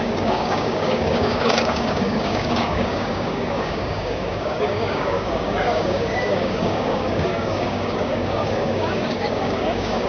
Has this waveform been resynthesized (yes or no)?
yes